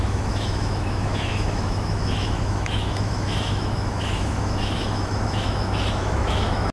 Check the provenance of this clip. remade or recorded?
remade